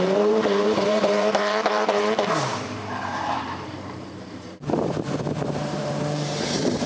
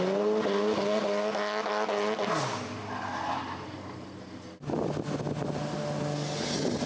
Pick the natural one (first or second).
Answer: second